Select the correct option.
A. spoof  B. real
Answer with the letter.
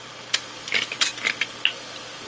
B